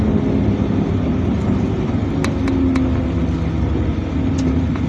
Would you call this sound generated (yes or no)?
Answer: no